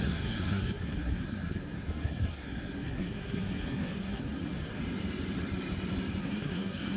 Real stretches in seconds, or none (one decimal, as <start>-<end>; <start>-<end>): 4.8-6.2